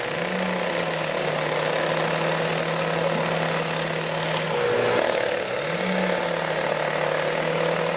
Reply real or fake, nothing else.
real